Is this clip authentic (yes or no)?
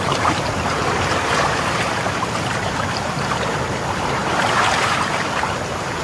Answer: no